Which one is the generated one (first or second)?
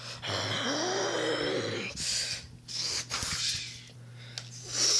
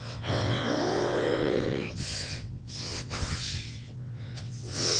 second